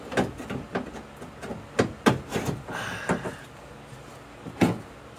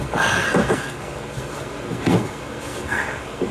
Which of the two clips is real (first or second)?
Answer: first